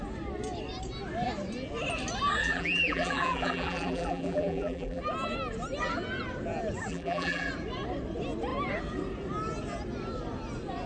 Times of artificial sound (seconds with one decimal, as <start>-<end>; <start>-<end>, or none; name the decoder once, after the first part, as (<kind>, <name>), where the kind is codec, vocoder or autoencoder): 2.4-5.0 (vocoder, BigVGAN v2); 6.9-7.5